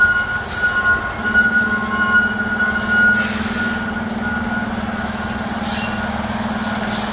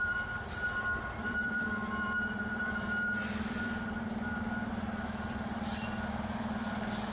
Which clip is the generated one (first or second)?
second